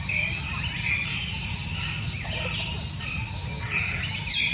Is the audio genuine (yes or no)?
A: yes